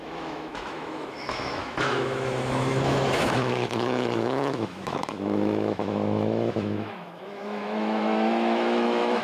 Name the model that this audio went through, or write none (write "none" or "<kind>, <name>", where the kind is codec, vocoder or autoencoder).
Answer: autoencoder, DAC-VAE